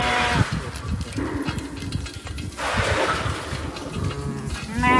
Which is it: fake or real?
real